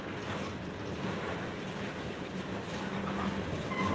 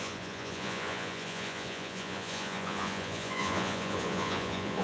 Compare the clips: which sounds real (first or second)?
first